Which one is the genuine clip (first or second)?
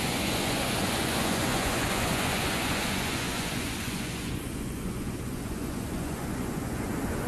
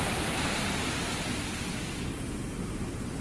second